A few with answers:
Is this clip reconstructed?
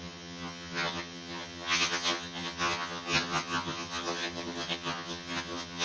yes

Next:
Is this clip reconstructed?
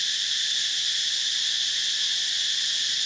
no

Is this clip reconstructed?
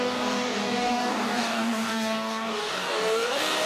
yes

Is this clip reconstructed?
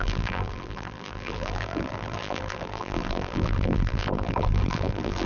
yes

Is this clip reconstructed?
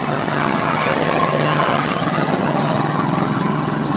yes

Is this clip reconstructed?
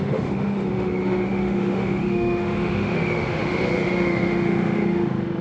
yes